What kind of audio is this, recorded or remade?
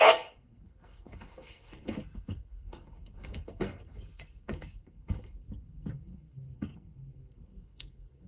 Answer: remade